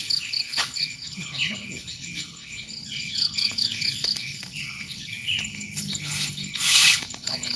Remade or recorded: remade